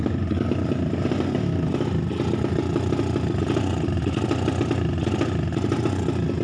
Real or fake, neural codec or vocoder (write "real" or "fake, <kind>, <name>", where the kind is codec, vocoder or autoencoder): real